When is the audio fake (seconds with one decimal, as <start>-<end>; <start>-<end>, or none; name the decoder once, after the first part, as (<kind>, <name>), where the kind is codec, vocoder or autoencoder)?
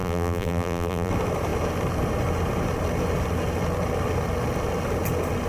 0.0-1.1 (vocoder, BigVGAN v2)